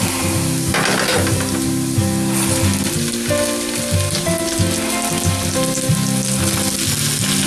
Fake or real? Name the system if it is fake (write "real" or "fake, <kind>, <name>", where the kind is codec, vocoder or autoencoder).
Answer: real